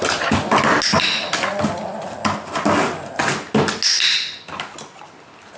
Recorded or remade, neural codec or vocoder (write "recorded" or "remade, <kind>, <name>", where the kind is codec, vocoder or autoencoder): recorded